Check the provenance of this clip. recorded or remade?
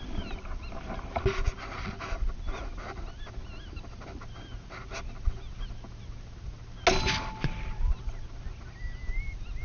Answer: recorded